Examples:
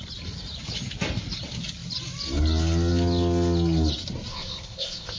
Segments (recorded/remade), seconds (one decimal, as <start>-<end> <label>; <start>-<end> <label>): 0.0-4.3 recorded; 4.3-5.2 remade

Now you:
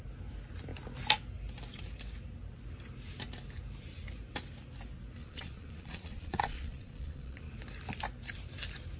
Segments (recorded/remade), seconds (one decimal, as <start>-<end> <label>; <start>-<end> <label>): 0.0-5.2 recorded; 5.2-7.5 remade; 7.5-9.0 recorded

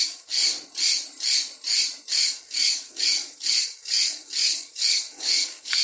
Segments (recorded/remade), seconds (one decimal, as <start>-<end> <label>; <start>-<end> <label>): 0.0-0.4 remade; 0.4-2.1 recorded; 2.1-5.8 remade

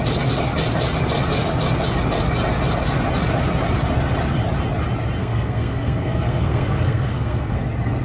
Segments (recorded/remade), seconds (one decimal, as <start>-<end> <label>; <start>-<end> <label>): 0.0-5.2 recorded; 5.2-7.6 remade; 7.6-8.0 recorded

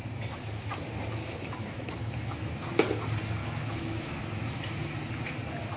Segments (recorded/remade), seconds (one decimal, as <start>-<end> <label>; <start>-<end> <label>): 0.0-1.2 recorded; 1.2-2.5 remade; 2.5-3.4 recorded; 3.4-4.2 remade; 4.2-5.8 recorded

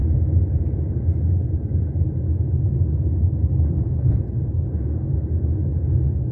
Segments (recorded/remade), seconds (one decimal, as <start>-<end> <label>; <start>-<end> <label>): 0.0-6.3 recorded